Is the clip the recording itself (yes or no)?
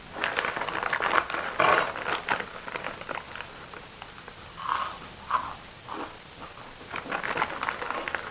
yes